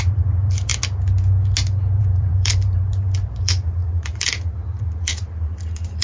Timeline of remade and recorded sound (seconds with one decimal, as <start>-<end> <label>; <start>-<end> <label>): 0.0-0.7 remade; 0.7-2.0 recorded; 2.0-6.0 remade